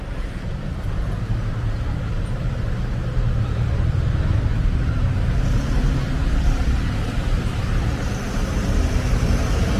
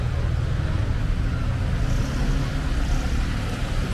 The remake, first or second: first